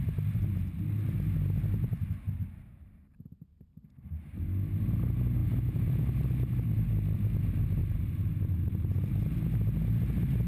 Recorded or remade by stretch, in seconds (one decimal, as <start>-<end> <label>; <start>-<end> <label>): 0.0-7.8 recorded; 7.8-9.0 remade; 9.0-10.5 recorded